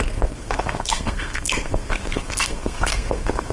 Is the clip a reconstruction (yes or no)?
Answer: yes